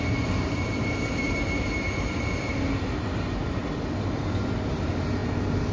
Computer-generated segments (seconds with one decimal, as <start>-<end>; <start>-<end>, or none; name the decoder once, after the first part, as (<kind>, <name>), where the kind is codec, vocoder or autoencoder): 0.0-3.6 (vocoder, BigVGAN v2); 4.7-5.7